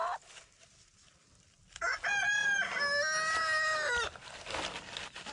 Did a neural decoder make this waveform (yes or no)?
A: no